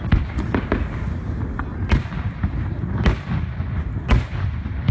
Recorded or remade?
recorded